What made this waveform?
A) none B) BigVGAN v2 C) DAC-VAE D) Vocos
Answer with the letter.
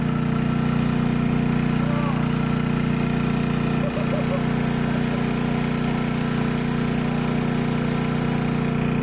A